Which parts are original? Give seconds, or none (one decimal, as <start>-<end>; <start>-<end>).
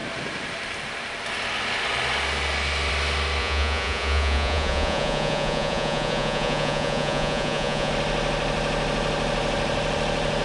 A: 0.0-3.4; 7.9-10.4